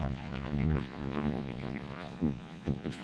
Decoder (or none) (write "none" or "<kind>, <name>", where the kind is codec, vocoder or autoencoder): vocoder, Vocos